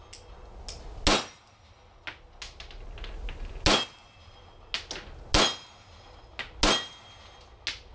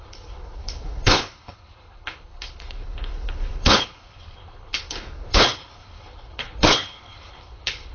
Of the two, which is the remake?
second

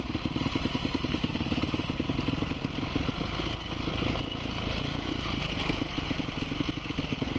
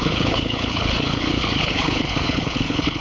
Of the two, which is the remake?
second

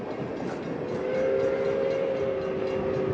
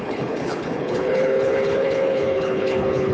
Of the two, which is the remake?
second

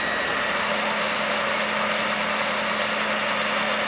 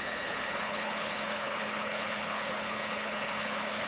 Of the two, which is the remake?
second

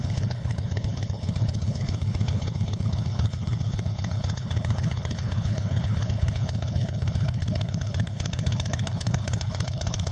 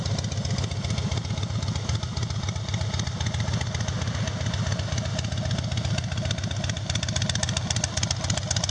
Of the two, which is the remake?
first